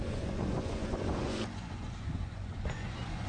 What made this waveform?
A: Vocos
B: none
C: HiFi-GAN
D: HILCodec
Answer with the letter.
A